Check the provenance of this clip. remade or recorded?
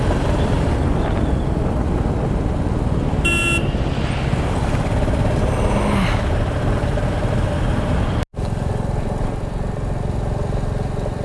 recorded